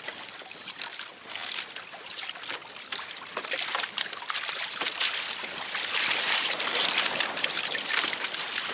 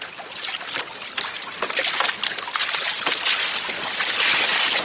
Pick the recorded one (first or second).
second